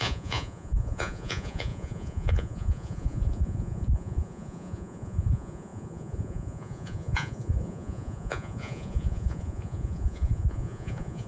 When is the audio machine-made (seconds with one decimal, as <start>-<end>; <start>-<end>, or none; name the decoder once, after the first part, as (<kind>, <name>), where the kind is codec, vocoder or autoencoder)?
0.0-11.3 (vocoder, Vocos)